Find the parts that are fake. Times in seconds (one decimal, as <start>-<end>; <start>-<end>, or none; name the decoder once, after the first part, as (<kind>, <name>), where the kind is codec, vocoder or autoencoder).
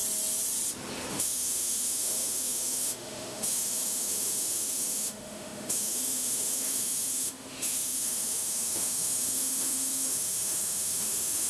1.1-11.5 (autoencoder, DAC-VAE)